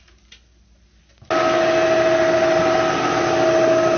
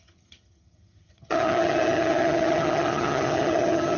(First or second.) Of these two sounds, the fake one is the second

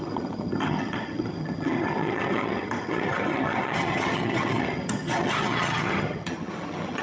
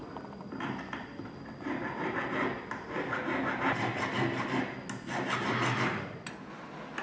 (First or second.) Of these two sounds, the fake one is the first